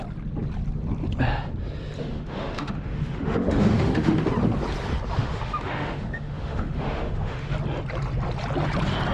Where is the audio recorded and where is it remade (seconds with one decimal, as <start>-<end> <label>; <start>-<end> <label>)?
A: 0.0-2.0 recorded; 2.0-4.2 remade; 4.2-5.2 recorded; 5.2-7.5 remade; 7.5-9.1 recorded